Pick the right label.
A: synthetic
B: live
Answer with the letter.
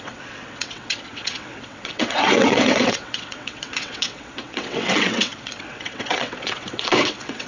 A